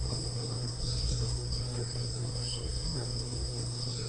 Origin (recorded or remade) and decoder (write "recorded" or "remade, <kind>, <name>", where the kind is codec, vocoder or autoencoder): remade, codec, SNAC